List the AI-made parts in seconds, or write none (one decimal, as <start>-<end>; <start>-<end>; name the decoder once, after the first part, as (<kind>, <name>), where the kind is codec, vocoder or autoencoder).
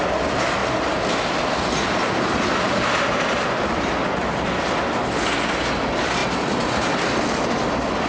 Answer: none